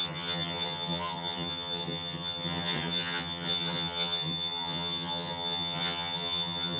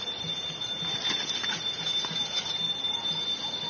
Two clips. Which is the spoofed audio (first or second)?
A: first